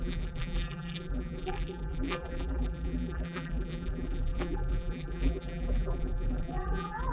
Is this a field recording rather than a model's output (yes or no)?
no